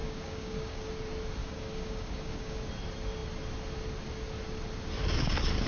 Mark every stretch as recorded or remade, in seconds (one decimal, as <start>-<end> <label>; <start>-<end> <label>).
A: 0.0-0.9 remade; 0.9-1.4 recorded; 1.4-2.7 remade; 2.7-5.7 recorded